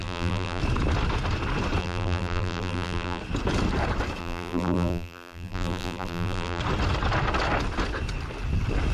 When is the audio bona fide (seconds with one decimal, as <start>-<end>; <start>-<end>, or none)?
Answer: 0.6-1.8; 3.2-4.2; 6.6-8.9

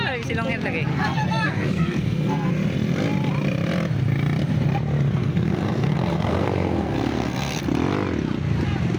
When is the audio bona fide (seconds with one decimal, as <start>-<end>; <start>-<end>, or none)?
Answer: 0.0-0.9; 2.5-5.2; 7.6-9.0

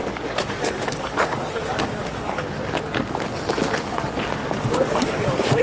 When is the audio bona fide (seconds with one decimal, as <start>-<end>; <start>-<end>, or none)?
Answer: 2.8-4.4

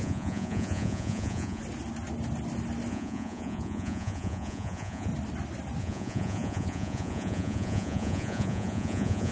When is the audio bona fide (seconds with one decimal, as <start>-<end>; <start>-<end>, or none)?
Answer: 1.6-2.9; 5.1-5.8

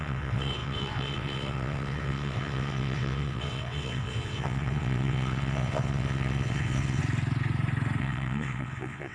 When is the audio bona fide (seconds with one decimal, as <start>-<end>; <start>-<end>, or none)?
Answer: 7.0-8.0

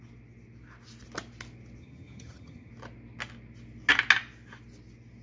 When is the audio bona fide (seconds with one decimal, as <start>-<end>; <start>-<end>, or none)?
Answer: 0.0-1.8; 2.7-5.2